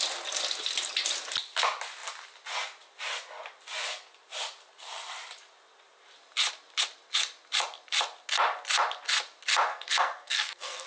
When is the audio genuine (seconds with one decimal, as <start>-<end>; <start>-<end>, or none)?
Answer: 0.0-9.7